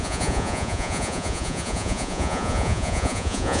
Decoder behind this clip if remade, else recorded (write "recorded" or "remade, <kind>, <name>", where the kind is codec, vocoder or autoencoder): remade, vocoder, Vocos